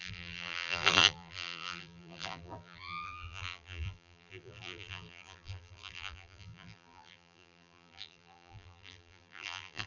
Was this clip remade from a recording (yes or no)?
yes